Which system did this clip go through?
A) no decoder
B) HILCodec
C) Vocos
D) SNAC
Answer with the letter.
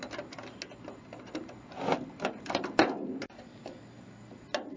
A